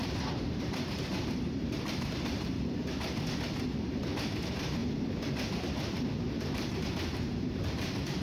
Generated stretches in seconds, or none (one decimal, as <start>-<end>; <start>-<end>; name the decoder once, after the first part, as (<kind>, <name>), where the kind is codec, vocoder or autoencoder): 0.0-2.8 (vocoder, BigVGAN v2); 4.3-4.8; 6.3-8.2